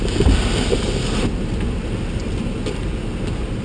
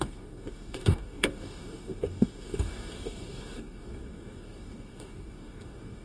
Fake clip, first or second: second